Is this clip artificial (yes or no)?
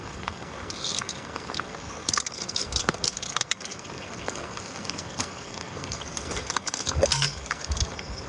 yes